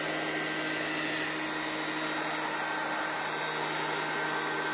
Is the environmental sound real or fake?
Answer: real